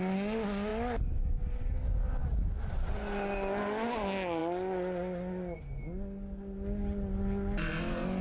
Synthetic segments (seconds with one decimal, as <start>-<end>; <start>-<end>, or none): none